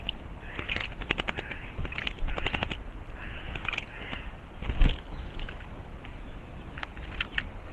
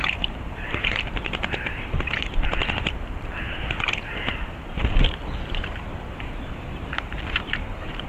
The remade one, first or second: second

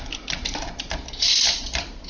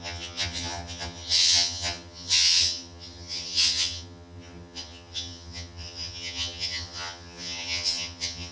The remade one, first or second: second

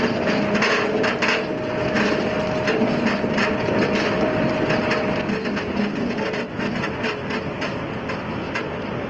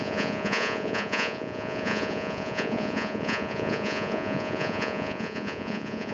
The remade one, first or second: second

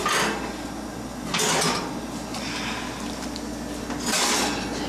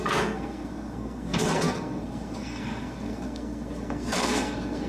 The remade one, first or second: second